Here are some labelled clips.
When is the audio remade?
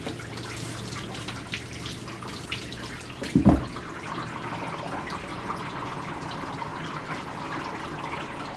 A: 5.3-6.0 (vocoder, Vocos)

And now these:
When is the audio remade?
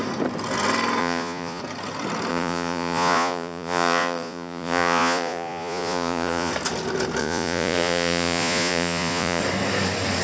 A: 1.0-1.6 (vocoder, Vocos); 2.3-6.5; 7.2-9.4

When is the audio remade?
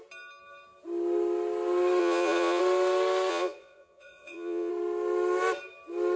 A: 2.0-2.6 (vocoder, Vocos); 3.3-4.7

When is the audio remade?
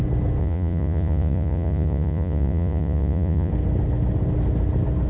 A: 0.4-3.5 (vocoder, Vocos)